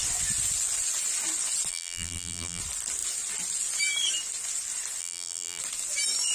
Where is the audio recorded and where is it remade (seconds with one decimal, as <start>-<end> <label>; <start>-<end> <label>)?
0.0-1.7 recorded; 1.7-2.6 remade; 2.6-5.0 recorded; 5.0-5.6 remade; 5.6-6.3 recorded